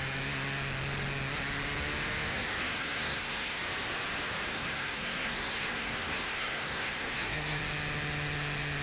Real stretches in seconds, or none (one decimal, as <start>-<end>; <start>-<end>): 0.0-2.3; 3.6-4.5; 7.6-8.8

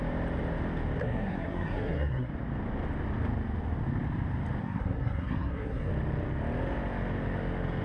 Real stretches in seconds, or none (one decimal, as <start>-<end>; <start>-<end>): 0.0-1.0; 2.3-4.6; 5.9-7.8

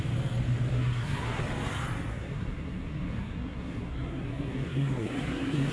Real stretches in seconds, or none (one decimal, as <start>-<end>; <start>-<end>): 0.0-0.7; 1.4-2.1

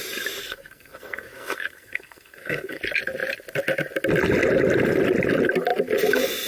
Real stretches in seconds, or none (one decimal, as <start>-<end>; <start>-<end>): 0.0-0.4; 2.8-6.5